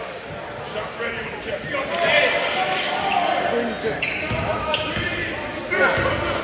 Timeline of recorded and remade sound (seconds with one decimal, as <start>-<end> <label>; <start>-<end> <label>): 0.0-3.8 recorded; 3.8-4.9 remade; 4.9-6.4 recorded